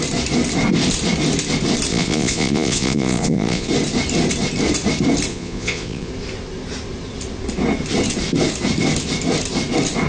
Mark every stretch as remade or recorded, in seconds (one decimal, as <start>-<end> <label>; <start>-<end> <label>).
0.0-1.9 recorded; 1.9-3.7 remade; 3.7-5.3 recorded; 5.3-6.1 remade; 6.1-10.1 recorded